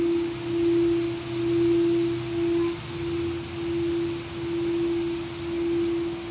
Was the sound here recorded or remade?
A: recorded